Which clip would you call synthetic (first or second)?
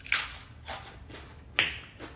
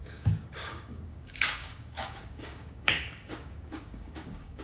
second